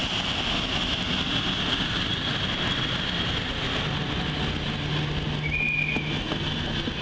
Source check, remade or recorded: recorded